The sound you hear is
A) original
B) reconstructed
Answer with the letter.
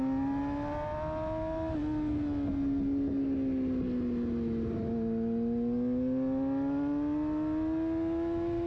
A